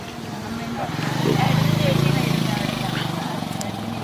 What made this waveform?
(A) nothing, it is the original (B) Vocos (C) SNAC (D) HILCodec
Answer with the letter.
A